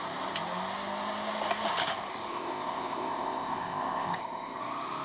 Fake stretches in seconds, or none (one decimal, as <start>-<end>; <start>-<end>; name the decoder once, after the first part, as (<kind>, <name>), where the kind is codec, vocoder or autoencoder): 2.3-4.6 (codec, ZipCodec)